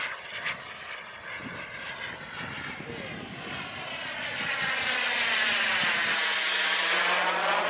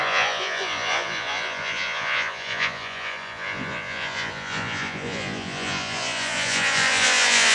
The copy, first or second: second